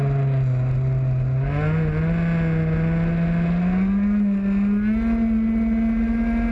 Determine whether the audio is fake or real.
real